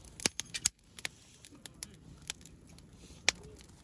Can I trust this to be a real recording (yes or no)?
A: yes